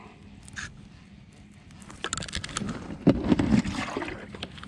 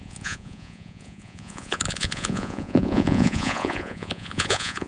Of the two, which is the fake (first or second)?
second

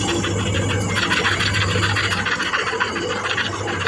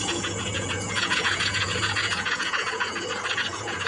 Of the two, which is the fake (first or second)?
second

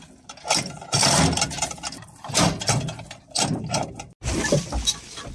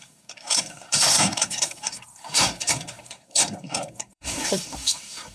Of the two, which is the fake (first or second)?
second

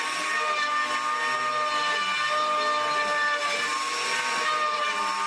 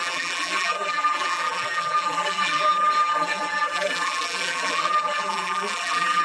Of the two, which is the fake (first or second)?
second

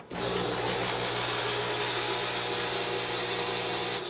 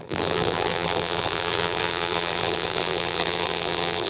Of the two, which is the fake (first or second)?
second